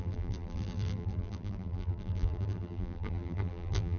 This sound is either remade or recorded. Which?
remade